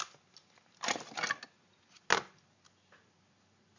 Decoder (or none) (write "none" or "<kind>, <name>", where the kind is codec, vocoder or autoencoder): none